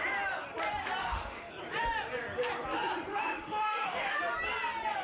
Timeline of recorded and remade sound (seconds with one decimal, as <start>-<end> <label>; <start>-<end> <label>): 0.0-1.0 recorded; 1.0-1.5 remade; 1.5-3.1 recorded; 3.1-4.2 remade; 4.2-5.0 recorded